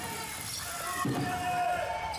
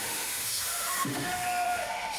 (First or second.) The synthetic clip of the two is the second